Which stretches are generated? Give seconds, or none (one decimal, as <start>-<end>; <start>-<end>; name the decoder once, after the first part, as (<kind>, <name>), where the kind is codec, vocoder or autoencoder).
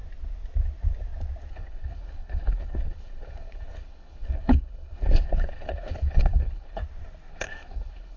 1.5-6.8 (codec, HILCodec); 7.3-8.2